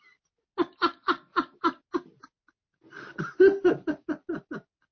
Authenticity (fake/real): real